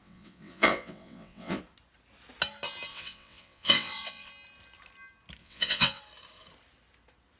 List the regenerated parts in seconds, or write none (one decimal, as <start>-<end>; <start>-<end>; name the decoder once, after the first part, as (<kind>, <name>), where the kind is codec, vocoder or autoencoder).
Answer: 0.0-1.6 (vocoder, WaveNeXt); 2.9-4.3; 5.4-6.0